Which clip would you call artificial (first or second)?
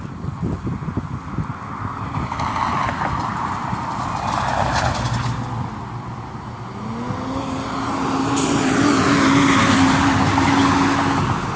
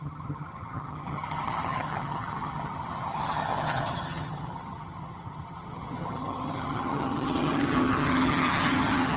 second